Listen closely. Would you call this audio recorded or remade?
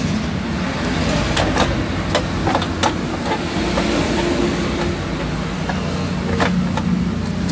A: recorded